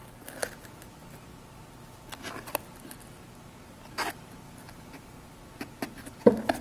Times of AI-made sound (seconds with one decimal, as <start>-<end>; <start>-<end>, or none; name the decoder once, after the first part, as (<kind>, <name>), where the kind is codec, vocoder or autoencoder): none